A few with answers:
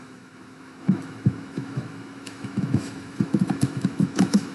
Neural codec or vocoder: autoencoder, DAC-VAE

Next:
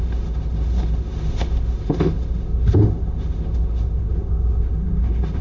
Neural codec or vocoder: autoencoder, DAC-VAE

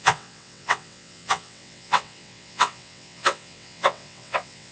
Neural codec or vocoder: vocoder, WaveNeXt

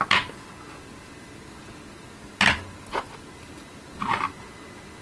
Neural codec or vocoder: none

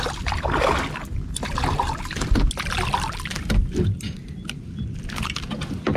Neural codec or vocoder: none